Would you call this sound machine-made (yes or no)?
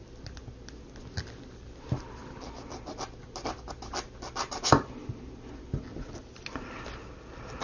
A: no